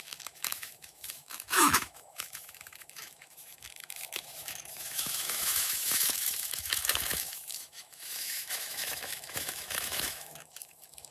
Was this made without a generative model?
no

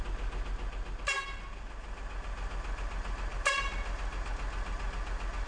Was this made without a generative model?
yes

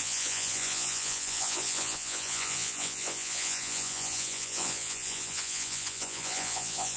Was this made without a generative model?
no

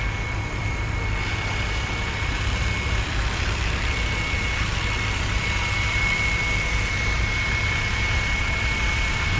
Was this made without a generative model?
no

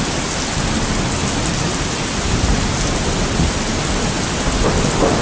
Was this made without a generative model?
yes